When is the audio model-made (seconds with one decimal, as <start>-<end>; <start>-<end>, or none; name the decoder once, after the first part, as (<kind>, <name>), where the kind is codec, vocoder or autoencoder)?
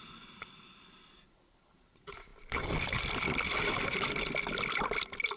none